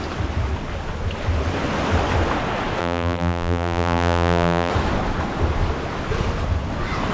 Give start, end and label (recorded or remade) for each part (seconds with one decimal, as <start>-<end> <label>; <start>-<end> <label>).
0.0-2.8 recorded; 2.8-4.7 remade; 4.7-7.1 recorded